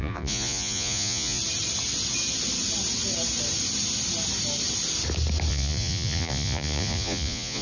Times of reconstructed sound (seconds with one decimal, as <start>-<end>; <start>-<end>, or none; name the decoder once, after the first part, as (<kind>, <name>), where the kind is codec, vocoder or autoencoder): 0.0-1.4 (vocoder, Vocos); 5.5-7.6